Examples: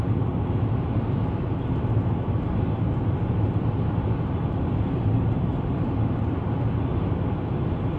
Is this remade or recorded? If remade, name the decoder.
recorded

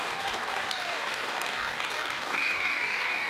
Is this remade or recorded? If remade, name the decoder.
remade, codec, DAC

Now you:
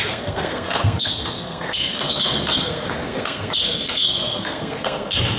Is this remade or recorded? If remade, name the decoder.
remade, codec, SNAC